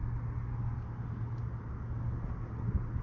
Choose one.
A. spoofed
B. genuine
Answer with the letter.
B